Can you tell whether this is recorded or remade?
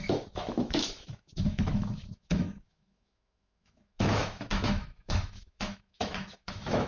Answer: remade